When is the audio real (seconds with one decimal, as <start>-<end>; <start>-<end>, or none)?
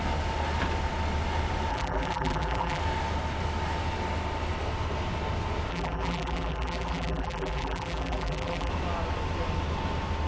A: 0.0-1.7; 2.8-5.7; 8.7-10.3